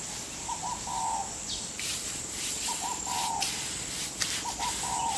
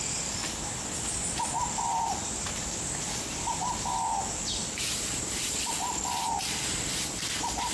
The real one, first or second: second